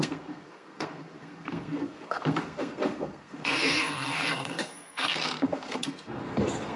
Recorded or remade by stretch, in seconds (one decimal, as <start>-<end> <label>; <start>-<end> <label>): 0.0-6.8 remade